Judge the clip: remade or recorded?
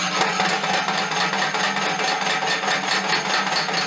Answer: recorded